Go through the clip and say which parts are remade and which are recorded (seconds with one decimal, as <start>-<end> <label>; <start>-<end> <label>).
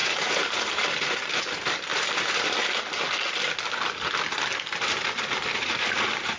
0.0-1.9 remade; 1.9-5.5 recorded; 5.5-6.4 remade